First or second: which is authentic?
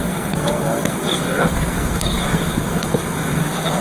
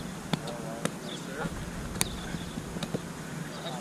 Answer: second